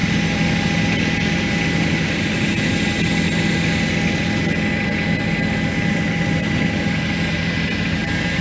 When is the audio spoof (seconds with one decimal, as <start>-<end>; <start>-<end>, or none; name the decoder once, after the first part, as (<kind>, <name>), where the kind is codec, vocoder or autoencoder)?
none